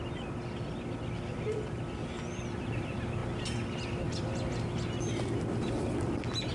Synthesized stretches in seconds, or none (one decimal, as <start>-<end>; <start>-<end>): none